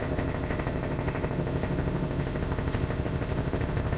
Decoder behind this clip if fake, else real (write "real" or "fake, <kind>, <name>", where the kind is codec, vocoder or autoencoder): fake, codec, ZipCodec